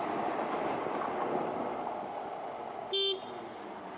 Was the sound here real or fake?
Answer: real